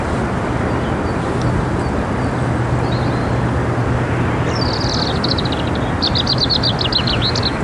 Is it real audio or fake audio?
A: real